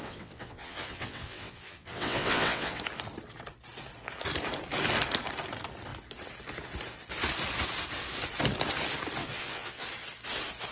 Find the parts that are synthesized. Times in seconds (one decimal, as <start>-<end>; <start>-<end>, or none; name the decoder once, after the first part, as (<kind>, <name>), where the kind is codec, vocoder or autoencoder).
0.0-2.8 (vocoder, WaveNeXt); 9.2-9.8